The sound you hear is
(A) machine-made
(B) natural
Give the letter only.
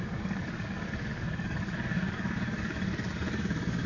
A